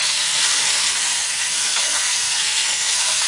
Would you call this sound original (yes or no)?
no